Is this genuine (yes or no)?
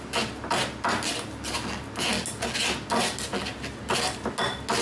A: yes